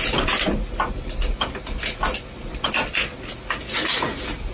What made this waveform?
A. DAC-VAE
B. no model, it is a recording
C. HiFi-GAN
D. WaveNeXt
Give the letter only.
B